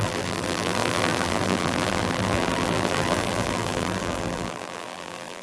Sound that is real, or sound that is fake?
fake